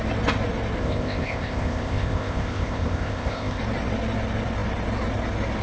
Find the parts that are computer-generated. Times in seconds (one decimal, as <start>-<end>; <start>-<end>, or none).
0.8-3.6